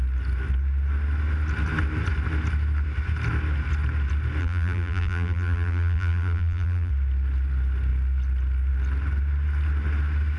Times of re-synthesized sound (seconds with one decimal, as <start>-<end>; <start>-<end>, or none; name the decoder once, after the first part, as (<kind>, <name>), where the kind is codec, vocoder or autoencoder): 4.4-6.9 (vocoder, BigVGAN v2)

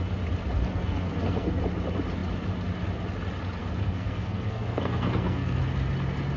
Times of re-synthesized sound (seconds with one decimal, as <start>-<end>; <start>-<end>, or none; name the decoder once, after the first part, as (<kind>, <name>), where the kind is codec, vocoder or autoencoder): 0.7-1.6 (codec, SNAC); 3.6-5.6

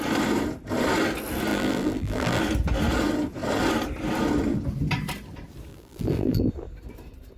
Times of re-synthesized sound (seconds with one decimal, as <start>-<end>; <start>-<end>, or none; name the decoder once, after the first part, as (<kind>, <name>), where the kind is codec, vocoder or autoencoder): 1.5-2.4 (vocoder, BigVGAN v2); 5.7-6.5

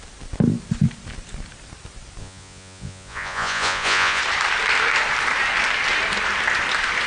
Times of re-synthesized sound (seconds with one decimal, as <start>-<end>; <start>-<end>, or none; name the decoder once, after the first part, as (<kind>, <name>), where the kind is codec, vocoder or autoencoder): 2.2-4.2 (vocoder, Vocos)